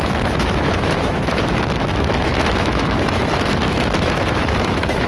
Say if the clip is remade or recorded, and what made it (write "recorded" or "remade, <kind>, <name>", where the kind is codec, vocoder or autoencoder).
remade, autoencoder, DAC-VAE